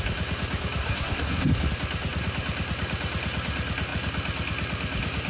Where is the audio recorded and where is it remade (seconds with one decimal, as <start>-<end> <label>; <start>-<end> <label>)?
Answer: 0.0-0.8 recorded; 0.8-1.5 remade; 1.5-5.3 recorded